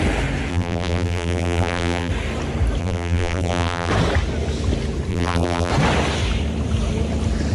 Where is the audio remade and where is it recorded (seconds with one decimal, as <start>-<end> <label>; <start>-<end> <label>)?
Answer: 0.0-0.5 recorded; 0.5-2.1 remade; 2.1-2.8 recorded; 2.8-3.9 remade; 3.9-5.1 recorded; 5.1-5.7 remade; 5.7-7.5 recorded